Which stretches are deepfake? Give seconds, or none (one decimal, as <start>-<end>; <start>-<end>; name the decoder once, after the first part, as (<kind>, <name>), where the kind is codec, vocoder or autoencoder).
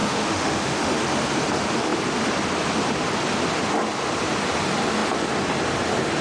0.0-0.9 (autoencoder, DAC-VAE)